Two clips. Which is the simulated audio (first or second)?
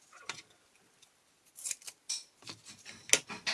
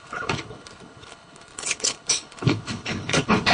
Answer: second